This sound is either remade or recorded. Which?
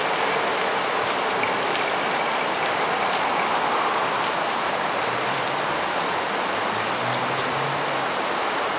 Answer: recorded